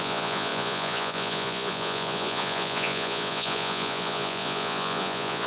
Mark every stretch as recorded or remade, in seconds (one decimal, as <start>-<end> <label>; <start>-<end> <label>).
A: 0.0-5.5 remade